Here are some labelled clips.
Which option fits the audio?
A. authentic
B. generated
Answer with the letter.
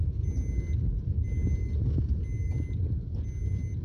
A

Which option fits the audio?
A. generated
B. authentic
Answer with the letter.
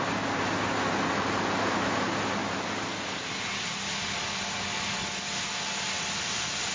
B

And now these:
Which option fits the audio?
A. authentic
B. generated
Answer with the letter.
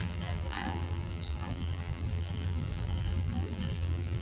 B